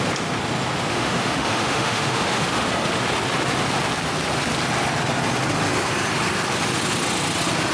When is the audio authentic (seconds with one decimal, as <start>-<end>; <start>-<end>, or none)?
0.0-0.9; 2.7-7.7